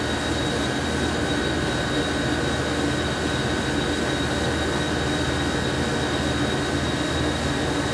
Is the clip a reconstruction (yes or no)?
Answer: no